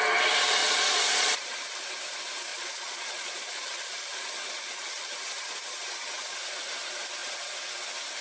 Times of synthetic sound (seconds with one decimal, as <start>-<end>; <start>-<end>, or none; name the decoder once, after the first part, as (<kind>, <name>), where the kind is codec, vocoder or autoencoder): 0.6-1.9 (vocoder, Vocos); 2.5-6.3